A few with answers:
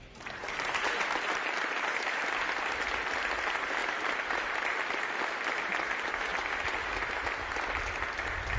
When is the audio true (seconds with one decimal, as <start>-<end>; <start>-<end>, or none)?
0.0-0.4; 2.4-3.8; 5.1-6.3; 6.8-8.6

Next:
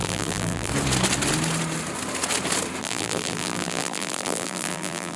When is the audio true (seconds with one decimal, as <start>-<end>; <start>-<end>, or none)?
0.7-2.8

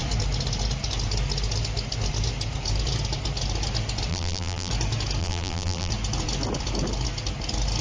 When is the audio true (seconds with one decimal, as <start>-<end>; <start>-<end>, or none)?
0.0-4.1; 4.7-5.2; 5.9-7.8

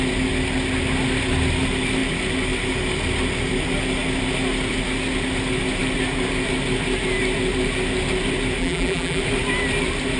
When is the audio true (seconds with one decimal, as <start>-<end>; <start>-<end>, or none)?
0.0-8.6; 9.2-10.2